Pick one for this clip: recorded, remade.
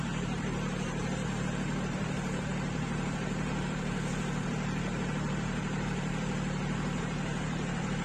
remade